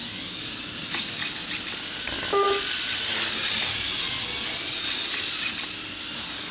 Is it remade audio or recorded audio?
recorded